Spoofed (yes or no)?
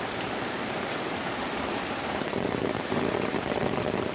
yes